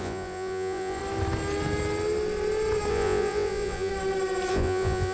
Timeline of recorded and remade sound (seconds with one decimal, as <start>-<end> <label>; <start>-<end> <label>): 0.0-1.0 remade; 1.0-2.9 recorded; 2.9-3.9 remade; 3.9-4.5 recorded; 4.5-5.1 remade